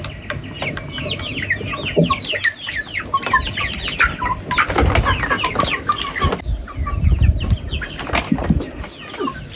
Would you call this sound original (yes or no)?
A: yes